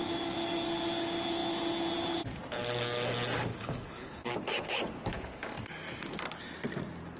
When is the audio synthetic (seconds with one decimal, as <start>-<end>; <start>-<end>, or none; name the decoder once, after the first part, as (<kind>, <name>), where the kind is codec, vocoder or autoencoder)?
3.5-4.3 (codec, HILCodec)